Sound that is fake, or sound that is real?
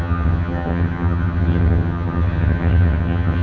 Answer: fake